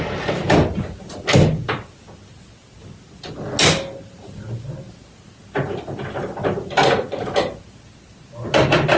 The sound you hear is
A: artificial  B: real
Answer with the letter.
B